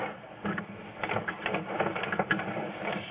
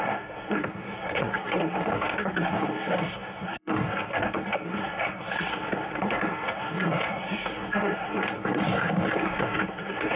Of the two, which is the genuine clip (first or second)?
first